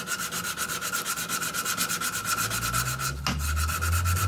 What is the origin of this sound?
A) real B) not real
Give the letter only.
A